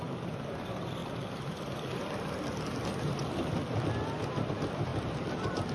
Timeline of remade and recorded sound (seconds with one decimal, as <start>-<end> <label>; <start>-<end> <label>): 0.0-5.7 recorded